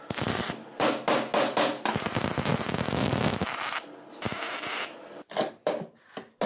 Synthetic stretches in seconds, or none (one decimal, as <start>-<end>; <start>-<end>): none